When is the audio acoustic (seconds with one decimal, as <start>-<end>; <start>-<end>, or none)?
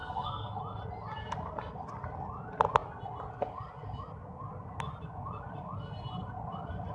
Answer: 0.6-6.9